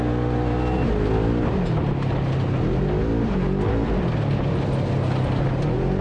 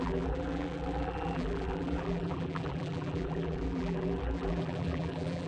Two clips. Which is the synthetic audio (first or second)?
second